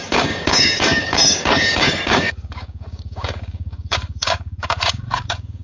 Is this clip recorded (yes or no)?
no